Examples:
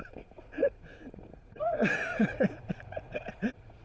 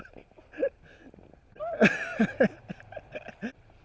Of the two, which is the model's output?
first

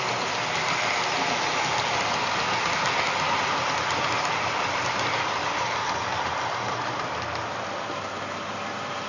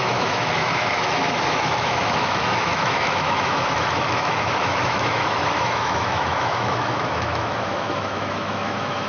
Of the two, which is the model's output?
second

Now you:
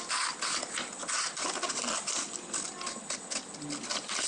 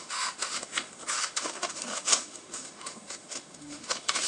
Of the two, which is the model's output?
second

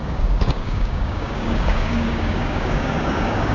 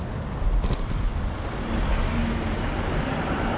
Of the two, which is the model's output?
first